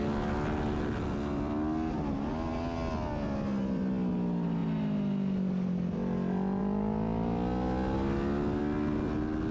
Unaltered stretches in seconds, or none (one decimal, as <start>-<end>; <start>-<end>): 0.0-9.5